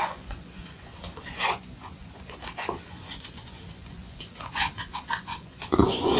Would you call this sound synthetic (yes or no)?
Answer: yes